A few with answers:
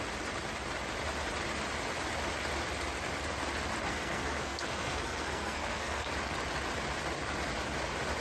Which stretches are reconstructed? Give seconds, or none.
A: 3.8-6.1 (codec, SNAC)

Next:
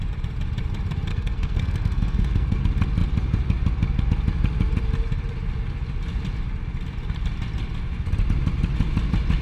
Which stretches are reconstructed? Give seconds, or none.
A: 1.1-2.6 (codec, SNAC)

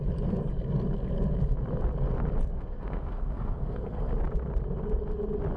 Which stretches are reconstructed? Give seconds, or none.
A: 2.5-4.1 (codec, SNAC)

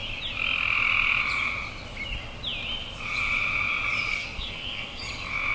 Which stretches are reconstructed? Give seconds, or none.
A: 4.1-5.0 (codec, SNAC)